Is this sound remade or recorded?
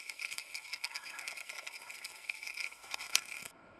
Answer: remade